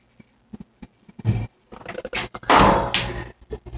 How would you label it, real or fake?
real